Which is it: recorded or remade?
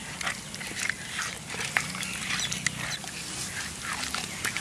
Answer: recorded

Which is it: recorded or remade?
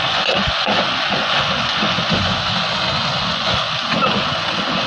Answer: remade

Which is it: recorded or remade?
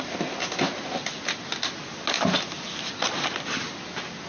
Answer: recorded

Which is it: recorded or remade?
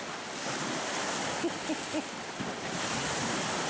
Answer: recorded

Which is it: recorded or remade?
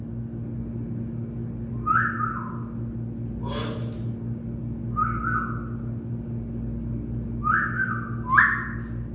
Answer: recorded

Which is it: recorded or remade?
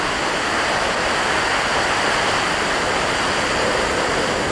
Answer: recorded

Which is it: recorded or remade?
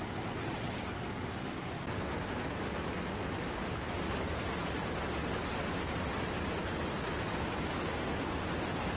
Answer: recorded